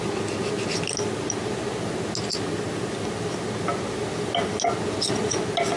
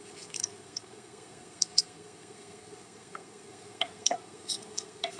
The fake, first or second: second